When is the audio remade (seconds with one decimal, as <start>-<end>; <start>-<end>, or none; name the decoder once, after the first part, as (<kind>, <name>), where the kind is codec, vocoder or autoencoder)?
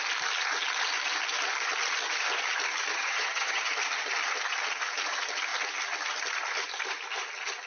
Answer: 2.9-3.7 (vocoder, HiFi-GAN)